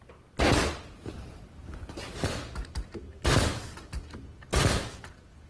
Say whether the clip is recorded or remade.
recorded